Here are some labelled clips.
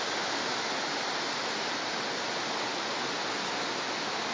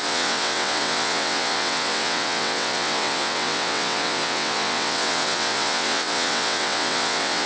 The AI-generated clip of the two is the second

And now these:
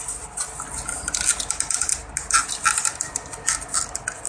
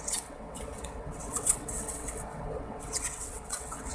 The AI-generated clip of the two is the second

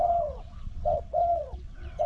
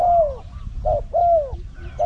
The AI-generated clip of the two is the first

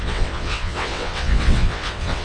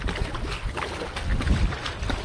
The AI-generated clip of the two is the first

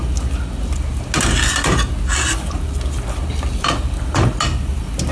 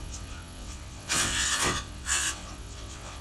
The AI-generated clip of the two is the second